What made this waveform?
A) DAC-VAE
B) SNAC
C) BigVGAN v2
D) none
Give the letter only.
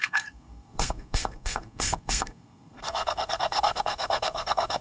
B